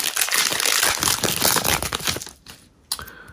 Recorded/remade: recorded